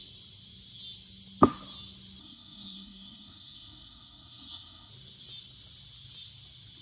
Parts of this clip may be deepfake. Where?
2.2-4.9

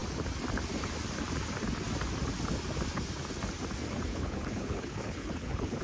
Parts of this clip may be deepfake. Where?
4.1-5.8

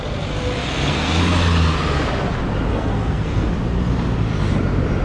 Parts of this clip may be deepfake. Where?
0.6-1.2; 2.7-3.5

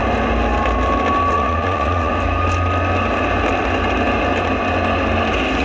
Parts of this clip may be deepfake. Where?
1.3-2.1

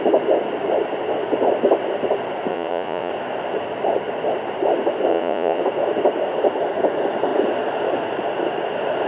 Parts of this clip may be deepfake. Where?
2.5-3.1; 5.1-5.6

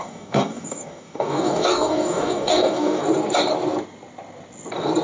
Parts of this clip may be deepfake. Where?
0.0-3.0

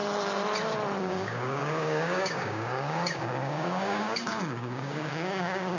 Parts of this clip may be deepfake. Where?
1.0-5.8

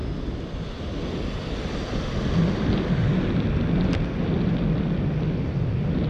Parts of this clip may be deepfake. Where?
none